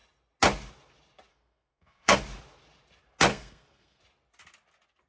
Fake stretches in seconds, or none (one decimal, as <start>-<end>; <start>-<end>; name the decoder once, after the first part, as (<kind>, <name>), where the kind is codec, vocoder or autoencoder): 1.3-2.2 (codec, SNAC); 3.3-4.0